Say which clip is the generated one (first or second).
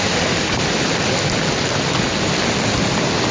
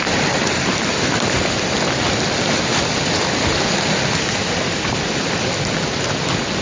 second